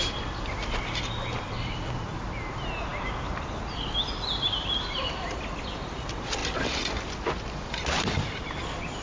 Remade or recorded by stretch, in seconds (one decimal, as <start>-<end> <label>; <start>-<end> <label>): 0.0-9.0 recorded